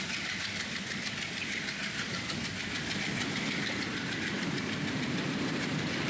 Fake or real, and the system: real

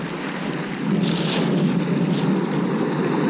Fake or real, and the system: real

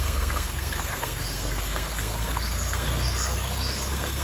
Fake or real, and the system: fake, codec, SNAC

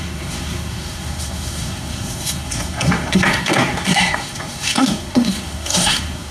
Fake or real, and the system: fake, codec, SNAC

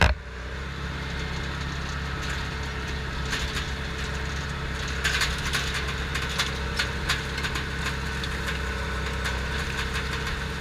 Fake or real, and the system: real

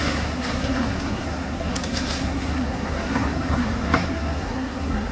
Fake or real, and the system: fake, codec, SNAC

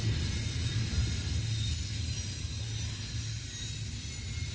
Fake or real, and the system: real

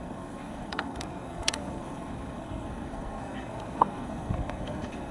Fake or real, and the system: fake, codec, SNAC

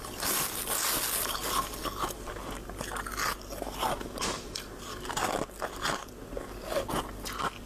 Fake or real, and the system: real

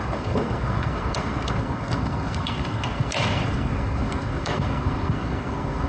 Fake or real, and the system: fake, codec, SNAC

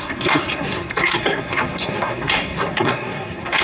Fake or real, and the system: fake, codec, SNAC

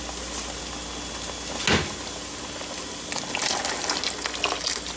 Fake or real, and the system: real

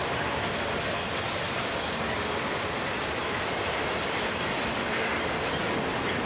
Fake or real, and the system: real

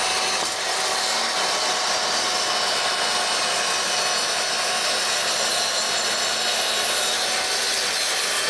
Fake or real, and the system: real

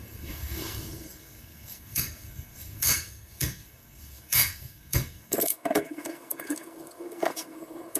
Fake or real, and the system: fake, codec, SNAC